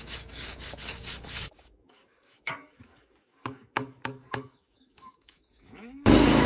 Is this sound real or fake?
fake